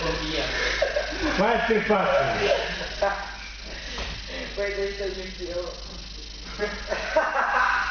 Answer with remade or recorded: recorded